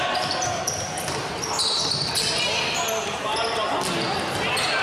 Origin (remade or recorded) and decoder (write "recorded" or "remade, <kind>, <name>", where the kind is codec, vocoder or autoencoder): recorded